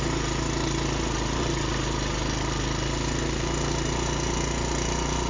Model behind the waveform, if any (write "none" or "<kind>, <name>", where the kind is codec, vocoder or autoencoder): none